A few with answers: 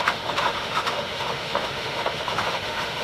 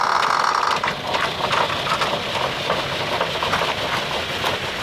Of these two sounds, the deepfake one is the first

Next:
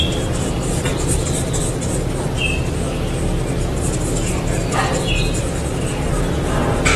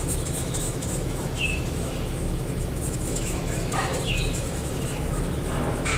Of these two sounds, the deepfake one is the second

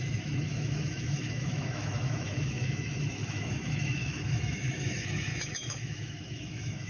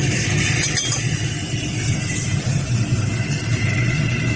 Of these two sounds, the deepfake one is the first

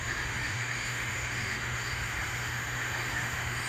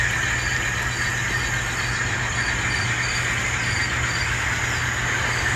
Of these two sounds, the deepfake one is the first